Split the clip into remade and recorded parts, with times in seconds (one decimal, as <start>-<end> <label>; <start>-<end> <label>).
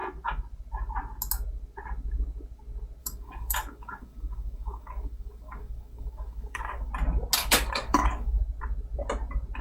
0.0-3.0 recorded; 3.0-6.9 remade; 6.9-7.4 recorded; 7.4-8.4 remade; 8.4-9.6 recorded